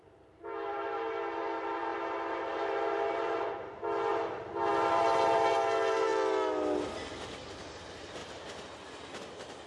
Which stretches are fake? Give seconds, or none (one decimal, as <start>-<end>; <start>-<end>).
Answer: 0.0-6.1; 7.5-8.2; 9.2-9.7